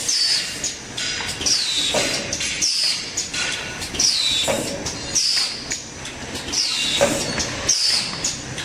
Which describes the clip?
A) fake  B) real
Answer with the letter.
B